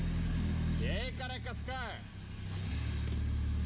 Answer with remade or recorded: recorded